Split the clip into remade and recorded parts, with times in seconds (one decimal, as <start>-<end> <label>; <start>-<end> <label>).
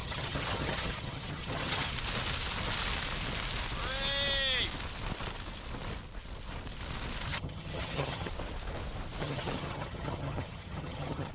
0.0-1.9 remade; 1.9-7.3 recorded; 7.3-8.3 remade; 8.3-9.2 recorded; 9.2-11.3 remade